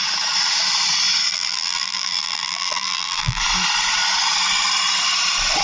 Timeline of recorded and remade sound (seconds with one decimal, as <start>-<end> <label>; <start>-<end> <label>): 0.0-1.3 recorded; 1.3-3.4 remade; 3.4-5.6 recorded